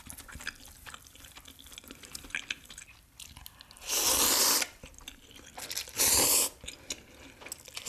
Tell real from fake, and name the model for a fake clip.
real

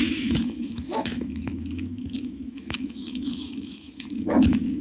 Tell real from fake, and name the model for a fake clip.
fake, autoencoder, DAC-VAE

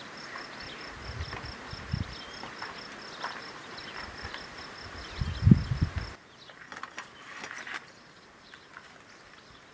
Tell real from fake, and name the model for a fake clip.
real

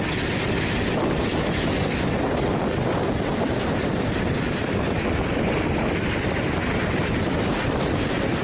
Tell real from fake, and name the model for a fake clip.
real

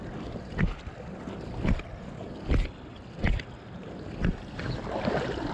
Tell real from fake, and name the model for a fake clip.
real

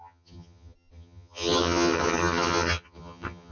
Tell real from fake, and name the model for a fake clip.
fake, vocoder, HiFi-GAN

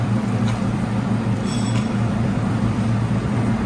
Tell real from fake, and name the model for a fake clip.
fake, vocoder, BigVGAN v2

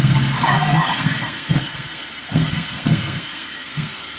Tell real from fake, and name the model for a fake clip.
fake, codec, SNAC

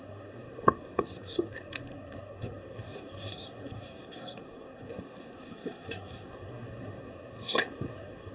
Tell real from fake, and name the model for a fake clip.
fake, codec, SNAC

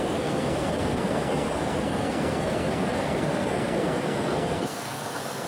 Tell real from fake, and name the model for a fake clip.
fake, codec, SNAC